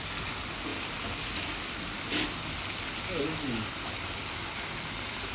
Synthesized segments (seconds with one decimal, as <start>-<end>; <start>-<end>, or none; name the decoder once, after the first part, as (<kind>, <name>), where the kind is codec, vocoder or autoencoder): none

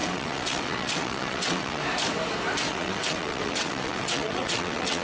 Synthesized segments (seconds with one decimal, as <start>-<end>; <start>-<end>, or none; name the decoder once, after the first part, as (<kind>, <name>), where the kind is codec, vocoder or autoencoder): 0.0-1.8 (vocoder, WaveNeXt); 2.7-5.0

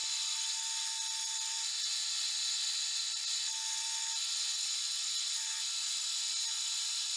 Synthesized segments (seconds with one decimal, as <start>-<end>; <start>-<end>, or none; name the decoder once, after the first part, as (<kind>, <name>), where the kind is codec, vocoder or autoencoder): none

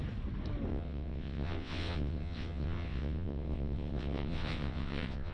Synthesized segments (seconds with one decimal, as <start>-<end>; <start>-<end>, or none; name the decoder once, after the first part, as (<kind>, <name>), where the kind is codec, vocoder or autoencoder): 0.7-5.3 (vocoder, WaveNeXt)

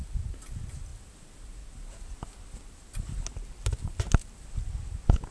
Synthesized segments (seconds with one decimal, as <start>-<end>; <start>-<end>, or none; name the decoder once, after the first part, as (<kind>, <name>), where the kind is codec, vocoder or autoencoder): none

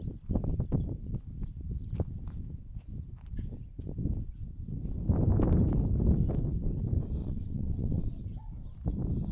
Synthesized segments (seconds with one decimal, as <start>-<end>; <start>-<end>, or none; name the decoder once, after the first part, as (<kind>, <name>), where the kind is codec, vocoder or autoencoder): 7.2-8.2 (vocoder, WaveNeXt)